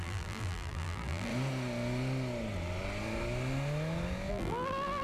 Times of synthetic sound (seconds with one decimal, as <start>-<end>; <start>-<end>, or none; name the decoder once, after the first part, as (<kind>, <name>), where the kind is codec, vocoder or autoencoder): 0.0-1.3 (vocoder, BigVGAN v2); 4.3-5.0